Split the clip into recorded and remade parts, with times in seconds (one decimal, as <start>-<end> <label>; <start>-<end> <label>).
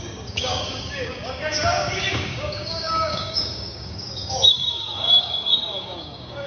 0.0-6.5 remade